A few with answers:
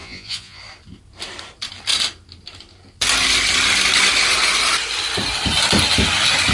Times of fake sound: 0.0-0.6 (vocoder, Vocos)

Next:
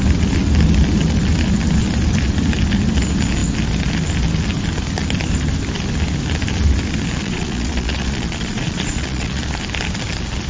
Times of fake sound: 7.2-9.4 (vocoder, Vocos)

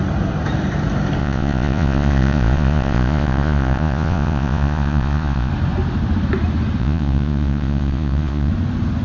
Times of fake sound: 1.2-5.5 (vocoder, Vocos); 6.8-8.5

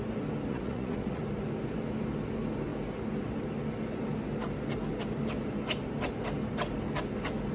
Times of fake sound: 0.5-1.2 (vocoder, Vocos)

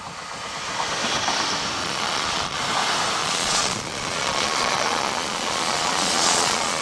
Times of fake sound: 1.8-2.6 (vocoder, Vocos); 3.2-6.8